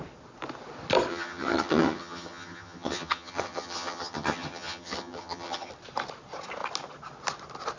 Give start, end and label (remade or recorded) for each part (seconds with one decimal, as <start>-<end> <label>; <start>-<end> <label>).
0.0-1.1 recorded; 1.1-5.7 remade; 5.7-7.8 recorded